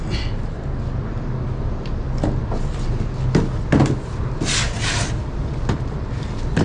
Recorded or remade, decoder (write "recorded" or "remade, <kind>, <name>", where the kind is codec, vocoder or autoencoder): recorded